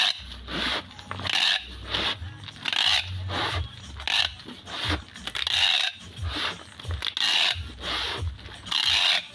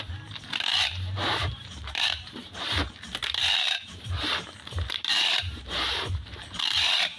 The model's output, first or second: second